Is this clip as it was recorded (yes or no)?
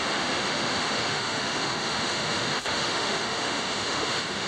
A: no